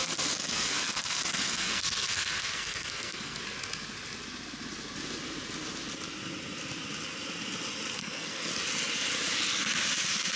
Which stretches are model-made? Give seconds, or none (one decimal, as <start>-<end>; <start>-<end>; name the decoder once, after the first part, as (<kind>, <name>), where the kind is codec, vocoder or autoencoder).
0.0-3.4 (codec, SNAC); 8.0-8.5